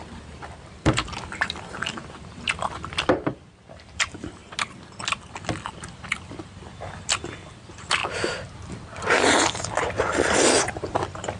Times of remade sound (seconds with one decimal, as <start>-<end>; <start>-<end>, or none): 0.0-4.4; 5.7-8.0; 10.8-11.4